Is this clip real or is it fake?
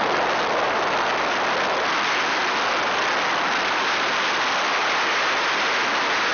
real